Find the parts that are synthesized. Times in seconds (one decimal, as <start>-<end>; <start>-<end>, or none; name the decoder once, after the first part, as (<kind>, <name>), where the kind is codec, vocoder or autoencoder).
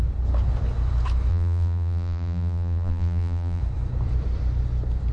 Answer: 1.3-3.6 (vocoder, BigVGAN v2)